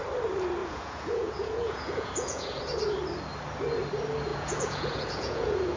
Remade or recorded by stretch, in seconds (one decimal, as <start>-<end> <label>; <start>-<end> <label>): 0.0-0.6 recorded; 0.6-2.6 remade; 2.6-4.3 recorded; 4.3-5.8 remade